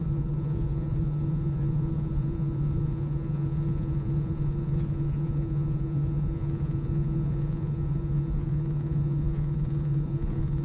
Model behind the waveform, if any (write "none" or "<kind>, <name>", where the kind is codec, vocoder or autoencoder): vocoder, Vocos